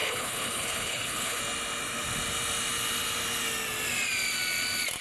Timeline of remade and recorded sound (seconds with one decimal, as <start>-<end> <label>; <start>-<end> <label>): 0.0-1.4 remade; 1.4-5.0 recorded

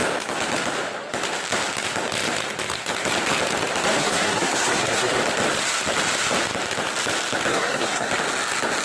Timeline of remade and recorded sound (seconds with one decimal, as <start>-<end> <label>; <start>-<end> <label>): 0.0-4.0 recorded; 4.0-5.2 remade; 5.2-7.5 recorded; 7.5-8.1 remade; 8.1-8.8 recorded

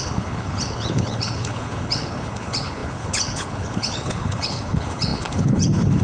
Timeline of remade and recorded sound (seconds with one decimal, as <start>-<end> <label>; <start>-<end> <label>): 0.0-6.0 remade

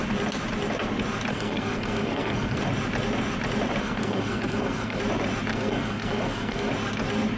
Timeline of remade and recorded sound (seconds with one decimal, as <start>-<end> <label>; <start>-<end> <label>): 0.0-1.3 recorded; 1.3-2.6 remade; 2.6-3.8 recorded; 3.8-5.0 remade; 5.0-5.5 recorded; 5.5-6.7 remade; 6.7-7.4 recorded

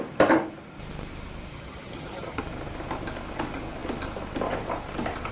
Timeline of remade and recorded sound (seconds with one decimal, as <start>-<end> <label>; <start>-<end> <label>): 0.0-1.5 recorded; 1.5-2.4 remade; 2.4-5.3 recorded

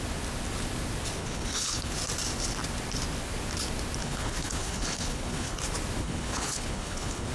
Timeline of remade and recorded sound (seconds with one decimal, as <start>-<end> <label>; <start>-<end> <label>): 0.0-1.2 recorded; 1.2-1.9 remade; 1.9-4.0 recorded; 4.0-5.6 remade; 5.6-6.0 recorded; 6.0-7.3 remade